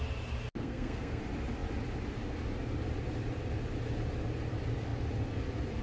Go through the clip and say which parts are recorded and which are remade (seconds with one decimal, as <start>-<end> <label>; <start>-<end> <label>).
0.0-0.6 recorded; 0.6-1.2 remade; 1.2-5.8 recorded